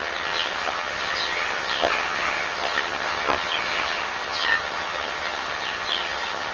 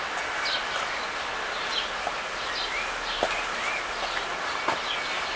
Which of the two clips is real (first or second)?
second